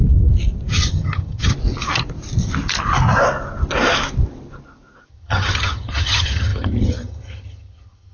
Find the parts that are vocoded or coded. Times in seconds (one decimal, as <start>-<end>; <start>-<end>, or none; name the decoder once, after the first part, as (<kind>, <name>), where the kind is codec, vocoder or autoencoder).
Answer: 0.7-1.5 (vocoder, HiFi-GAN); 5.1-8.1

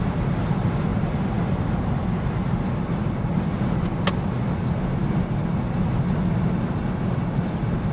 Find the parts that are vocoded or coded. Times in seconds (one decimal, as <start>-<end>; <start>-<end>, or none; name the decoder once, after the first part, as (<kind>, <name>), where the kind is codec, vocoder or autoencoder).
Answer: none